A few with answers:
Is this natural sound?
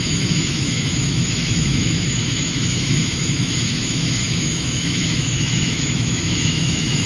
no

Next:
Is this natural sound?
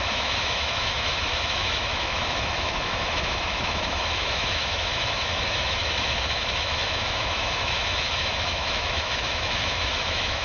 no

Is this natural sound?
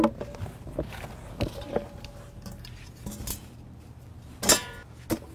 yes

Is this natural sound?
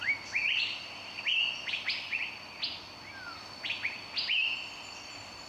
yes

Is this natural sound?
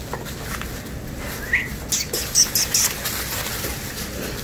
yes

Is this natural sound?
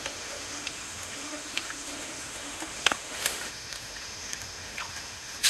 no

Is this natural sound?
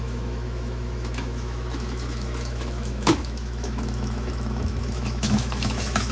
no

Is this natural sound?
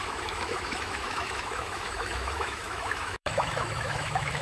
no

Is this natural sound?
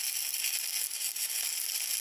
yes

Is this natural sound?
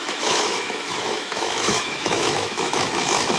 no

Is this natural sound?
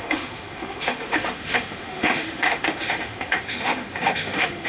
no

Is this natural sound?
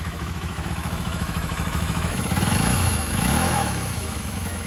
no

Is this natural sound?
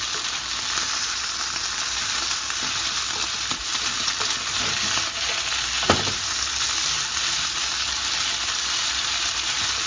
yes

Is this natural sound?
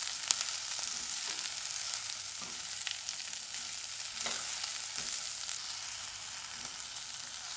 yes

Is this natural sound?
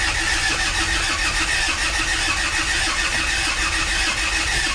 yes